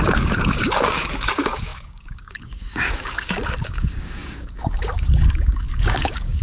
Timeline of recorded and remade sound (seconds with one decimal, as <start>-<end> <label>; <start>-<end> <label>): 0.0-6.4 remade